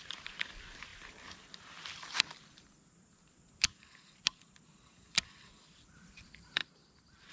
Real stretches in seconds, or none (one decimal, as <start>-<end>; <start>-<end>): 0.9-4.8